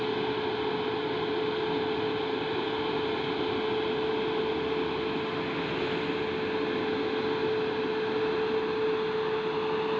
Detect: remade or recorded recorded